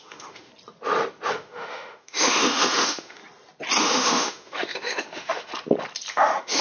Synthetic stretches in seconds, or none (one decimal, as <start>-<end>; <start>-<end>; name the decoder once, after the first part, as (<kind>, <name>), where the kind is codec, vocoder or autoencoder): 0.0-0.5 (autoencoder, DAC-VAE); 1.3-3.2; 3.8-5.5; 6.1-6.6